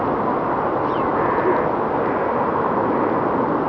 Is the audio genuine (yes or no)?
yes